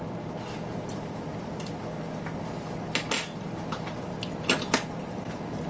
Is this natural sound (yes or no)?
yes